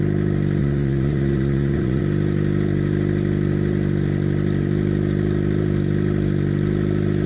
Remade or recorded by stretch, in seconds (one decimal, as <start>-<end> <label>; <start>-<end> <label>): 0.0-0.6 recorded; 0.6-2.0 remade; 2.0-7.3 recorded

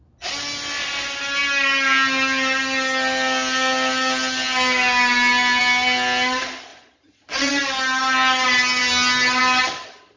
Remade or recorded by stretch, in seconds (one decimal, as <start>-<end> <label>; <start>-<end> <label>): 0.0-6.7 recorded; 6.7-7.5 remade; 7.5-10.2 recorded